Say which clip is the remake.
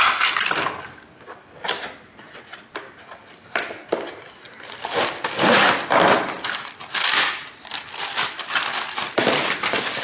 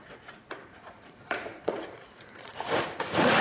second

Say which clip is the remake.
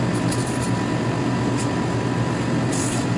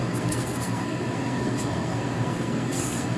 second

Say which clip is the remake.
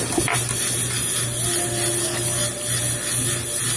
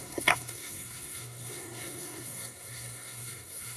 second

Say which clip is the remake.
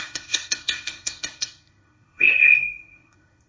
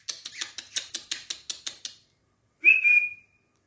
first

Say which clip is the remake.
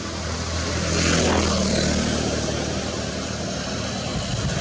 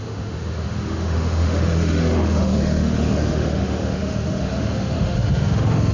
second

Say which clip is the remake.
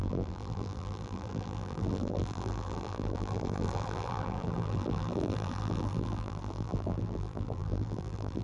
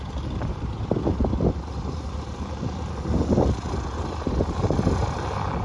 first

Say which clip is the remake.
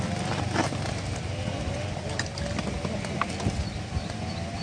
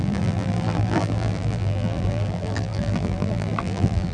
second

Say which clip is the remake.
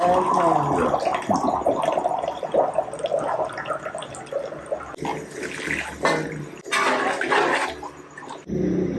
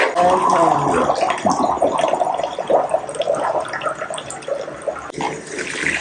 second